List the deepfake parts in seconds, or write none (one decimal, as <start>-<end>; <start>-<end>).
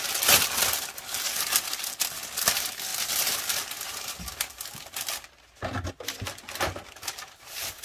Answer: none